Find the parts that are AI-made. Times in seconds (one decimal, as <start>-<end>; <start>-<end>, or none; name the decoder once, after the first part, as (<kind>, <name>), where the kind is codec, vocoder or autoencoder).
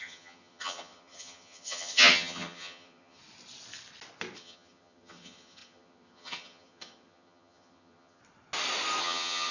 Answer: 0.0-3.2 (vocoder, HiFi-GAN); 4.4-8.2; 9.0-9.5